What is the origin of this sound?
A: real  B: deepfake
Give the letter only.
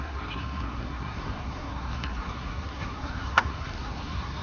B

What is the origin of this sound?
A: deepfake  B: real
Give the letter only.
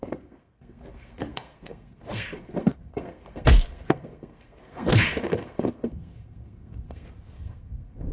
A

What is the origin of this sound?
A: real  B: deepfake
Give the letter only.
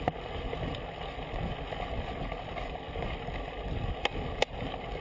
A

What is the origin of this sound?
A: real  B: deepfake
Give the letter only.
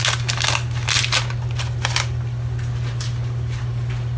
A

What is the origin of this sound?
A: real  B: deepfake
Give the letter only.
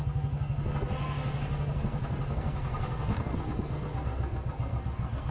B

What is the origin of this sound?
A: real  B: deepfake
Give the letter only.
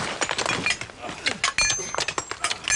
A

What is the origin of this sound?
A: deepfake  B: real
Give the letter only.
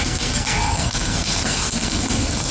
A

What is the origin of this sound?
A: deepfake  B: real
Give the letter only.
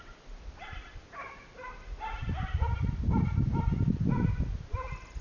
B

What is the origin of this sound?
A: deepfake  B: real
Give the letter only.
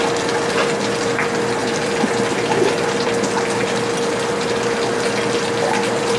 B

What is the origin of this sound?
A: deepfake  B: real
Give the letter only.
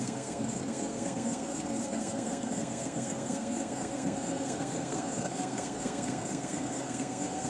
A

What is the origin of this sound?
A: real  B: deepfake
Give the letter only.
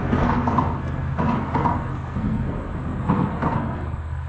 B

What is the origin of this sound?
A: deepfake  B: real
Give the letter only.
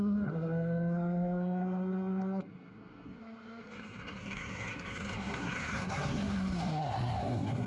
A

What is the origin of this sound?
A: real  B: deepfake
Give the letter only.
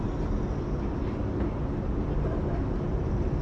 A